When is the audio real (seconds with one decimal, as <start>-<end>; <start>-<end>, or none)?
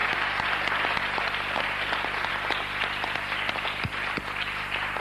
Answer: 0.0-5.0